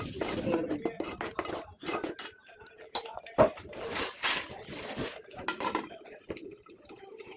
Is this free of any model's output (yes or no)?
yes